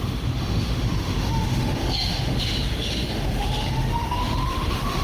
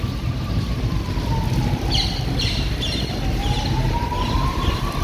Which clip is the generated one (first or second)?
first